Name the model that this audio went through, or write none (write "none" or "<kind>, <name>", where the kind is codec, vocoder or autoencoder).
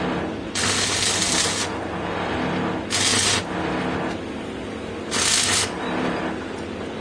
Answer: none